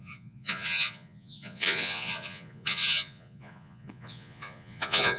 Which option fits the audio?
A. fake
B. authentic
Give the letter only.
A